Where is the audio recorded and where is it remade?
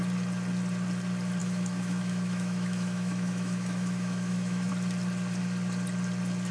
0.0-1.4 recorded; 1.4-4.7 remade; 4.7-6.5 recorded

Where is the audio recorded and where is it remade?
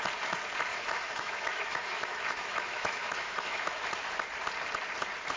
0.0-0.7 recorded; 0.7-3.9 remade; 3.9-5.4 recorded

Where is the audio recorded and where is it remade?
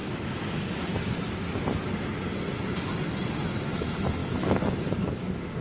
0.0-0.8 remade; 0.8-4.2 recorded; 4.2-5.6 remade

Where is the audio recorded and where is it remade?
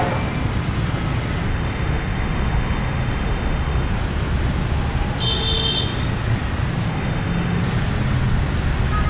0.0-1.5 recorded; 1.5-3.9 remade; 3.9-6.9 recorded; 6.9-7.6 remade; 7.6-9.1 recorded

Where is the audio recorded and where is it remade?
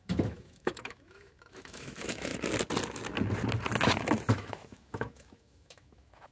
0.0-2.3 remade; 2.3-4.3 recorded; 4.3-6.3 remade